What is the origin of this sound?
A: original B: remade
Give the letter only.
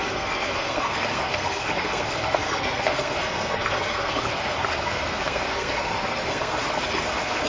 B